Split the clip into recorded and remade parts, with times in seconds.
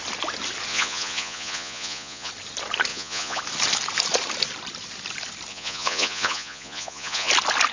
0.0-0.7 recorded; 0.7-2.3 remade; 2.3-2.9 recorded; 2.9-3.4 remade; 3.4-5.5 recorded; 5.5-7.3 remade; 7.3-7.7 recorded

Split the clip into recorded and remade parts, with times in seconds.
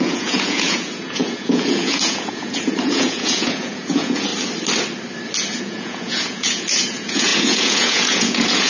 0.0-4.3 remade; 4.3-5.6 recorded; 5.6-8.7 remade